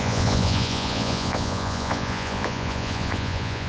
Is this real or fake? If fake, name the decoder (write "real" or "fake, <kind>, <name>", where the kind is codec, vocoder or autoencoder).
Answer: fake, vocoder, Vocos